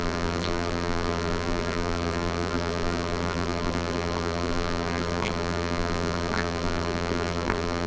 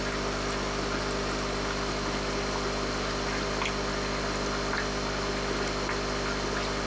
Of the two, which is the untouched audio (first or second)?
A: second